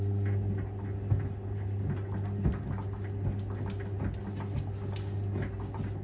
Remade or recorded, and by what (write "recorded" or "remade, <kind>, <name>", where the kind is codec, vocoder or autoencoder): recorded